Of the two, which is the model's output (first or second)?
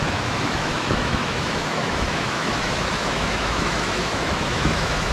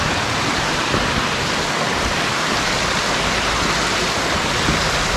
first